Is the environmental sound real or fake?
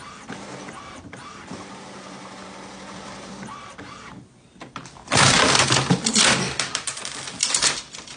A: real